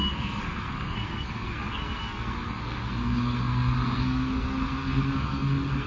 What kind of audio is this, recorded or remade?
remade